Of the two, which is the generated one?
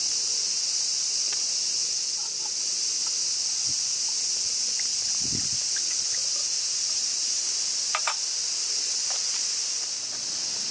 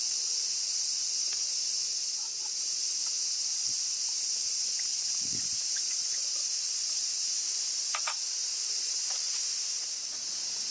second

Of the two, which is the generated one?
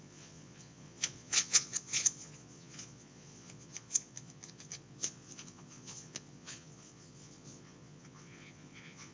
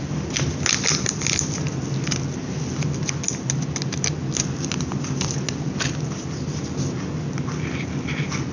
first